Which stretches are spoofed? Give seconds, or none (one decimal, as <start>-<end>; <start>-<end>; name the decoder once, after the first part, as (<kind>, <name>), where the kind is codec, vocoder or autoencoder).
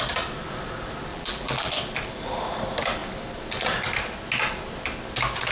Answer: 1.1-1.7 (vocoder, BigVGAN v2)